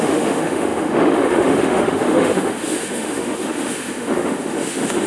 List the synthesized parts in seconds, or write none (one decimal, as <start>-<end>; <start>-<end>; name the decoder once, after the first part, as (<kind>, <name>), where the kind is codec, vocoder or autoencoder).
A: 0.0-5.1 (autoencoder, DAC-VAE)